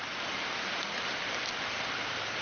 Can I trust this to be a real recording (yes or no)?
no